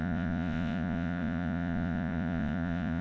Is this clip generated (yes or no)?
yes